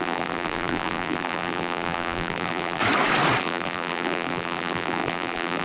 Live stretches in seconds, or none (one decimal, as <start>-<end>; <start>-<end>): 2.8-3.4